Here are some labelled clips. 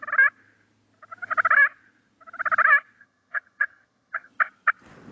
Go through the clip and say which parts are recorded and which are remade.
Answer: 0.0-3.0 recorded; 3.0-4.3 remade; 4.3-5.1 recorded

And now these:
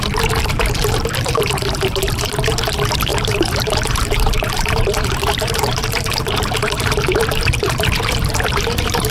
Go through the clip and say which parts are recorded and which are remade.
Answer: 0.0-9.1 remade

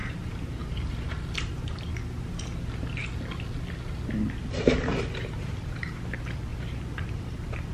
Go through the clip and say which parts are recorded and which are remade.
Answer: 0.0-2.3 remade; 2.3-6.5 recorded; 6.5-7.7 remade